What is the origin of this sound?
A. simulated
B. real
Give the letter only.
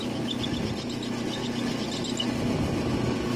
B